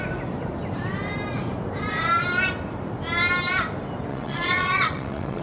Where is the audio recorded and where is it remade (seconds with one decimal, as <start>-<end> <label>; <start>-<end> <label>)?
0.0-4.1 recorded; 4.1-5.4 remade